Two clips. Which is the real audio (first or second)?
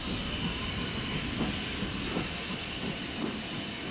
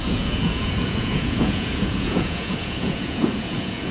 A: first